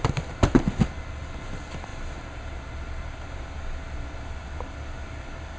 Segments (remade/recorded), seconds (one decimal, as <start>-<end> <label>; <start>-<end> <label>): 0.0-5.6 recorded